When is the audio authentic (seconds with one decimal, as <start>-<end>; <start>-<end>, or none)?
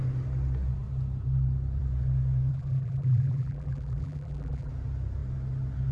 0.0-2.5; 4.7-5.9